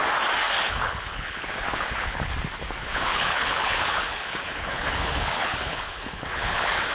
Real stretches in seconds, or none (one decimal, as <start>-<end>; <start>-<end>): 0.0-0.6; 2.3-2.8